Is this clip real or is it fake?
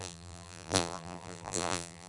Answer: fake